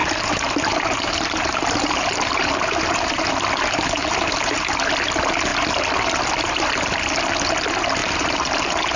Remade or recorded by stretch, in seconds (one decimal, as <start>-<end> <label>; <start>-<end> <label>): 0.0-4.7 remade; 4.7-8.0 recorded; 8.0-9.0 remade